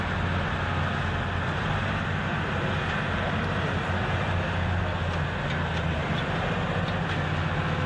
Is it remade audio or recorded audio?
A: recorded